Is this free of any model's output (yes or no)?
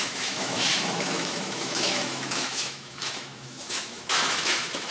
no